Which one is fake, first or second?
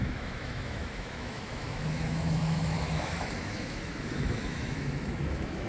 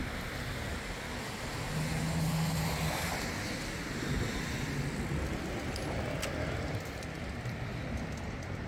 first